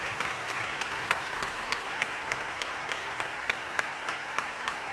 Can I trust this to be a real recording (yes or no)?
no